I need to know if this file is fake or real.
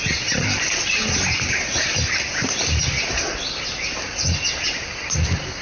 real